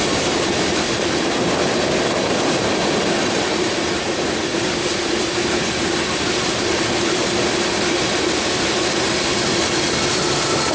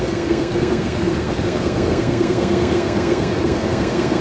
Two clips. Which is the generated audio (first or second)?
second